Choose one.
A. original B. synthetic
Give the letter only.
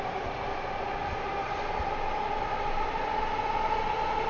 A